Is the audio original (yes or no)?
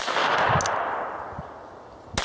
yes